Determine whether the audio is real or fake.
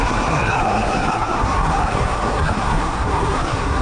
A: fake